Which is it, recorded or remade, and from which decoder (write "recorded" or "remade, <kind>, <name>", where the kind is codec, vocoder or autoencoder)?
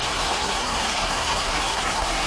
remade, codec, SNAC